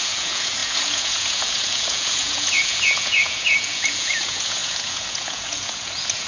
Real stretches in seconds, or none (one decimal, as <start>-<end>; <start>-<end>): none